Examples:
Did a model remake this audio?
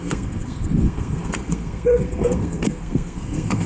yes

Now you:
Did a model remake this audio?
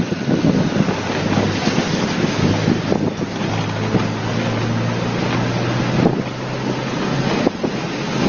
no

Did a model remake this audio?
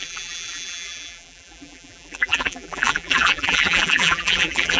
yes